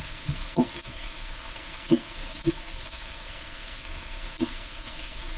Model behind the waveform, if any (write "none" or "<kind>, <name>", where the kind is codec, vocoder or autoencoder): codec, SNAC